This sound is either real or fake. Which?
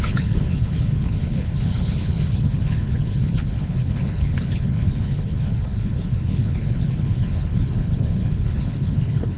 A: fake